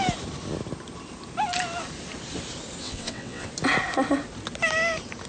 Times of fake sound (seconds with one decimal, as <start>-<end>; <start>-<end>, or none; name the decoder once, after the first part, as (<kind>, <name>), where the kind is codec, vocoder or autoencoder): 2.8-3.5 (vocoder, WaveNeXt)